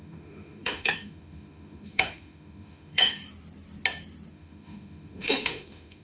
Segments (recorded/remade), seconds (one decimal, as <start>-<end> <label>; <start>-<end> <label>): 0.0-3.2 remade; 3.2-4.3 recorded; 4.3-6.0 remade